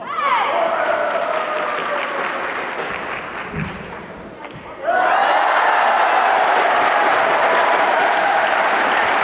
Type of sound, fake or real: real